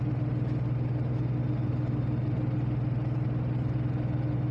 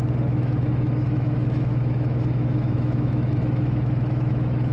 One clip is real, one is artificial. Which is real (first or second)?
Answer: first